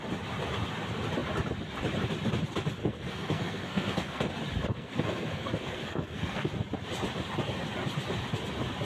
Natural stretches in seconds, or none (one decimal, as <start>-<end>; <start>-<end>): 0.0-2.8; 4.3-4.7; 6.5-8.9